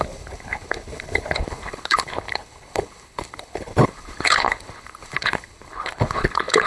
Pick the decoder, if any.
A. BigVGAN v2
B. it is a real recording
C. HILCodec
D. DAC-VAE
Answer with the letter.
C